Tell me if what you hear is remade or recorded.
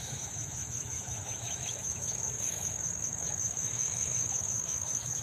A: remade